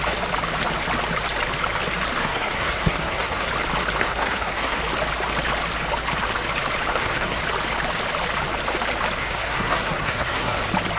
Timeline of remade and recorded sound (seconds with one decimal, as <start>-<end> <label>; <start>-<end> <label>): 0.0-2.2 recorded; 2.2-3.5 remade; 3.5-4.0 recorded; 4.0-4.8 remade; 4.8-6.9 recorded; 6.9-7.4 remade; 7.4-9.2 recorded; 9.2-10.6 remade; 10.6-11.0 recorded